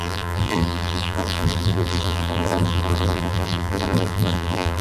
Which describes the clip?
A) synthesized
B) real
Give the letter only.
A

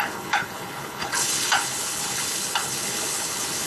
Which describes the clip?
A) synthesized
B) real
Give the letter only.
A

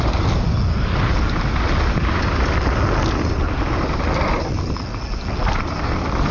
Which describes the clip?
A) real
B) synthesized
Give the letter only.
A